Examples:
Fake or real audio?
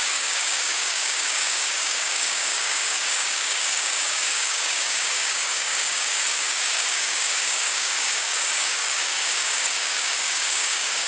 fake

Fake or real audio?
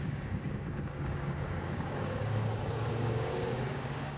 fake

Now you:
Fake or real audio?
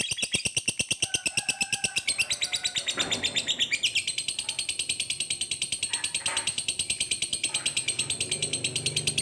real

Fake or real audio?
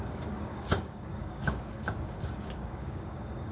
fake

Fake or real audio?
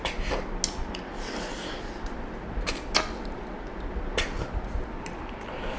real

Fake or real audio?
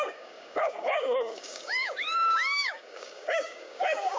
fake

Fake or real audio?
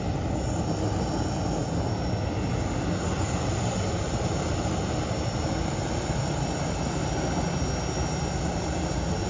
real